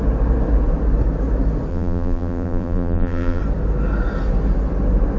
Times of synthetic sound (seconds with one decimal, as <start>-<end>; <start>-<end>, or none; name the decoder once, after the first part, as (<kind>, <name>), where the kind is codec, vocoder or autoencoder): 1.7-3.4 (vocoder, BigVGAN v2)

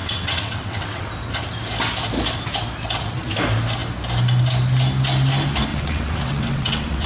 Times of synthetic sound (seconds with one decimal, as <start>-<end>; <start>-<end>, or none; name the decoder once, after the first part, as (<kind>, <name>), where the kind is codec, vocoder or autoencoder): 0.0-1.1 (vocoder, WaveNeXt); 5.7-7.1

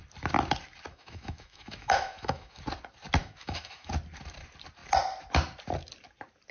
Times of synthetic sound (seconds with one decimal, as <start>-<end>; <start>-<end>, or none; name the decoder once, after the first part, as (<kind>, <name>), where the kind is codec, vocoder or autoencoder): 0.9-2.6 (autoencoder, DAC-VAE); 3.2-3.9

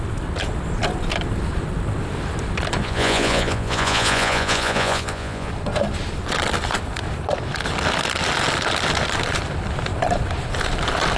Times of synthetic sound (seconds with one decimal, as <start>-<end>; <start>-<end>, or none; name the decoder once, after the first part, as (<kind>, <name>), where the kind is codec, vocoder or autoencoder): 2.8-5.5 (vocoder, Vocos)

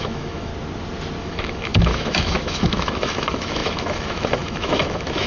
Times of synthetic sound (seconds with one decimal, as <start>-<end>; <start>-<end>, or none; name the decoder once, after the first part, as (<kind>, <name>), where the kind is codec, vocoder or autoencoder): 0.0-0.5 (autoencoder, DAC-VAE); 1.2-5.3

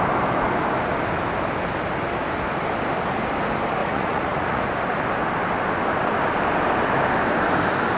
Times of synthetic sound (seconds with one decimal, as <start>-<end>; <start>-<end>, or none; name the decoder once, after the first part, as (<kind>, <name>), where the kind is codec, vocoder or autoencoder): 3.8-4.6 (vocoder, Vocos)

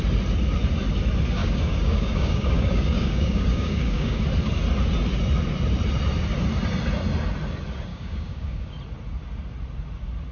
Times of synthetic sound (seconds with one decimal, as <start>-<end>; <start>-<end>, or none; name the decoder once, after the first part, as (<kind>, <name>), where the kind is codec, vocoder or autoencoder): 1.4-4.2 (codec, DAC); 7.9-8.7

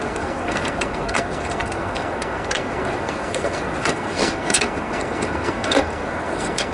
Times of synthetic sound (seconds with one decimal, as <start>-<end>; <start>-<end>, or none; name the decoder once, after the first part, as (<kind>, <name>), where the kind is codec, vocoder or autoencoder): 0.0-6.7 (codec, SNAC)